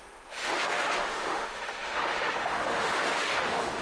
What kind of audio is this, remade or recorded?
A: remade